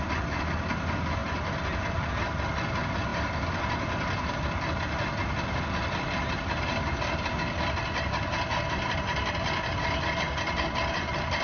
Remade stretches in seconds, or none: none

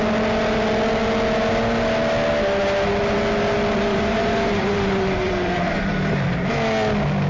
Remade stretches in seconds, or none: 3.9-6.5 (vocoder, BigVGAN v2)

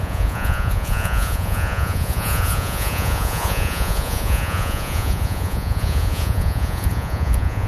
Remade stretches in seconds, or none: 0.0-7.7 (vocoder, Vocos)

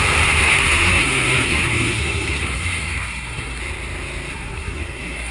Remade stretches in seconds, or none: 0.4-3.6 (codec, SNAC); 4.3-5.3

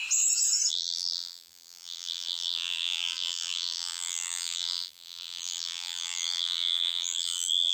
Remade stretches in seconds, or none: 0.7-7.7 (vocoder, BigVGAN v2)

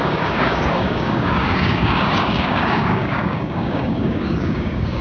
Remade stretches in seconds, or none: 0.0-5.0 (codec, DAC)

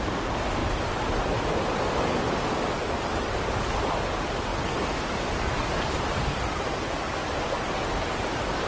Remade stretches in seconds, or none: none

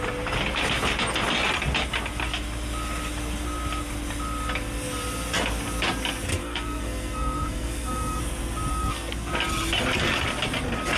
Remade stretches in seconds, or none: 6.4-8.2 (codec, SNAC); 8.7-9.3